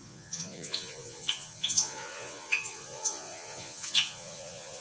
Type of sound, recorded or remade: remade